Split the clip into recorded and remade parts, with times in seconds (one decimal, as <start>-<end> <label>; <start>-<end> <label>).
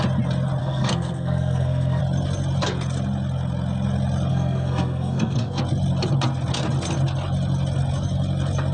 0.0-0.6 recorded; 0.6-2.0 remade; 2.0-4.3 recorded; 4.3-5.6 remade; 5.6-8.7 recorded